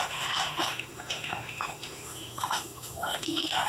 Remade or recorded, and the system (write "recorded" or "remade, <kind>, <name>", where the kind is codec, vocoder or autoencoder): remade, autoencoder, DAC-VAE